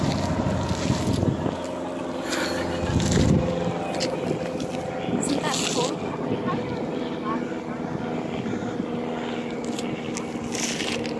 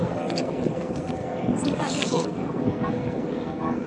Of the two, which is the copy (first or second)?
second